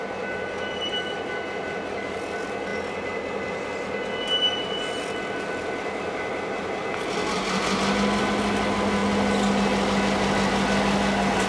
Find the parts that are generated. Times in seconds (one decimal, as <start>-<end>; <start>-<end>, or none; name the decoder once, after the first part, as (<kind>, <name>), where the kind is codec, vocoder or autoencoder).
none